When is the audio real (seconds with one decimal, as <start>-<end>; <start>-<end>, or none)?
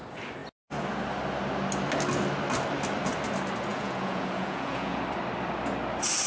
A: 0.0-3.7; 5.0-6.3